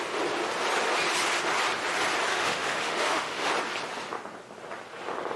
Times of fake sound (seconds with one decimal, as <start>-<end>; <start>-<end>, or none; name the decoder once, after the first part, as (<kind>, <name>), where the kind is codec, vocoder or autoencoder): 2.3-3.5 (autoencoder, DAC-VAE)